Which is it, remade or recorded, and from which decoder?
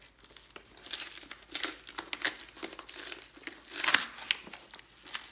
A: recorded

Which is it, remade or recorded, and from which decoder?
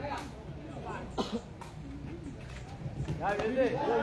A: recorded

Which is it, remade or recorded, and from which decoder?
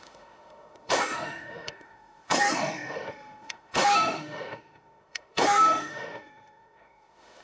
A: remade, autoencoder, DAC-VAE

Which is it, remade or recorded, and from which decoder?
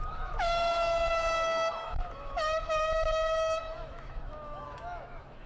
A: remade, autoencoder, DAC-VAE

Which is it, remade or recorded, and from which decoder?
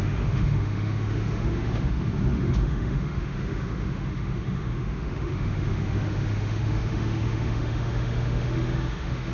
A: remade, autoencoder, DAC-VAE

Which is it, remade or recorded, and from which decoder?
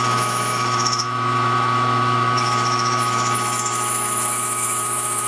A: remade, autoencoder, DAC-VAE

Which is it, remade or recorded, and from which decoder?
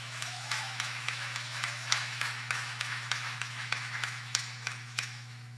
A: remade, autoencoder, DAC-VAE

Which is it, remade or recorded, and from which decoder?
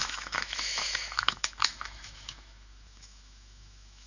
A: remade, autoencoder, DAC-VAE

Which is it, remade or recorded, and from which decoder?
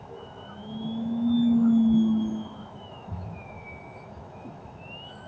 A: remade, autoencoder, DAC-VAE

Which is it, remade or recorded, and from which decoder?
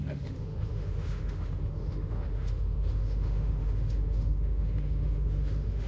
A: remade, autoencoder, DAC-VAE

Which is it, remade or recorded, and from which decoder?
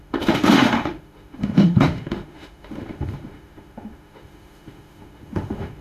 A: remade, autoencoder, DAC-VAE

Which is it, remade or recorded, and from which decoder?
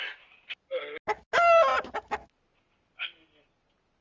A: recorded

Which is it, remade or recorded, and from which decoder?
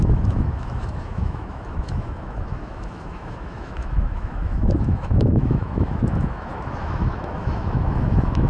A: remade, autoencoder, DAC-VAE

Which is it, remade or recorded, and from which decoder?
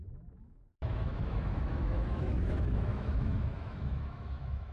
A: remade, autoencoder, DAC-VAE